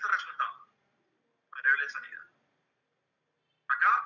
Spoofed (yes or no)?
no